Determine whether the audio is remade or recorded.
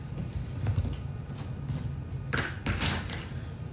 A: recorded